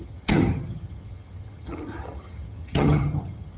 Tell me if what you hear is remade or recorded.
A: remade